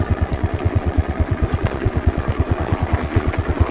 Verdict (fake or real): fake